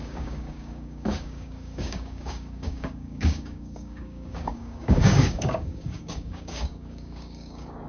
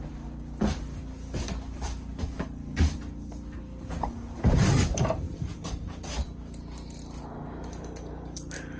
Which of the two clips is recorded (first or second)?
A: second